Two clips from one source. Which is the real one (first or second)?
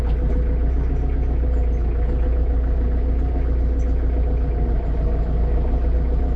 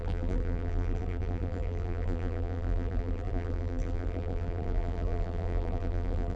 first